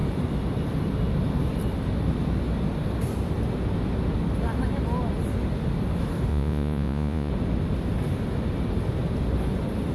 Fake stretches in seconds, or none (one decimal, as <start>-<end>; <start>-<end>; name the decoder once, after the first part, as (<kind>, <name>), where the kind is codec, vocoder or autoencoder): 6.3-7.3 (vocoder, Vocos)